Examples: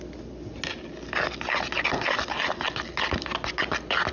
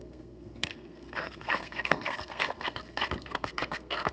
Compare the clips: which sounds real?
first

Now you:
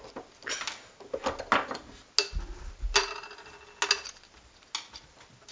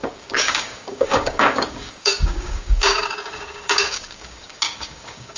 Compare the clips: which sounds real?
first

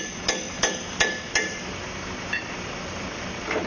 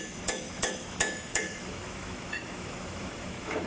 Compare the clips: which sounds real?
first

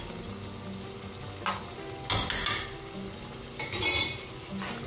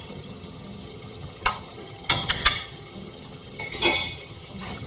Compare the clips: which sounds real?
first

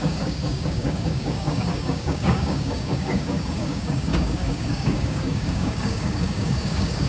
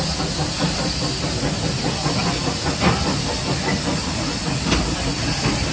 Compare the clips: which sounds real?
second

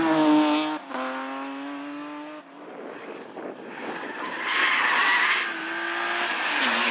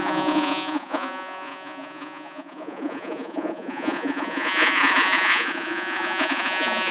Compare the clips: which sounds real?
first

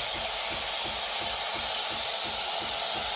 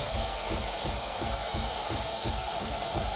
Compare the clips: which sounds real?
first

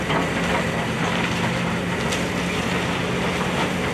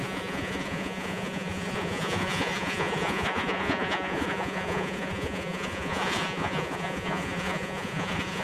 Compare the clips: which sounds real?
first